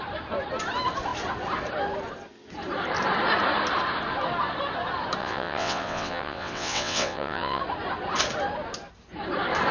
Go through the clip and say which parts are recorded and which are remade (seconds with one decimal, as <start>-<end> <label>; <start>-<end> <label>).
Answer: 0.0-5.2 recorded; 5.2-7.6 remade; 7.6-9.7 recorded